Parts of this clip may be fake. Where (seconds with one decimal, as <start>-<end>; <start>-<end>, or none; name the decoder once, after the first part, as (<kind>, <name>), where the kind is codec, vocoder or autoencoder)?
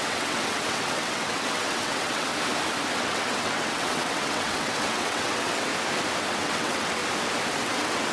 0.0-2.3 (vocoder, WaveNeXt); 3.0-5.7; 6.3-7.0; 7.5-8.1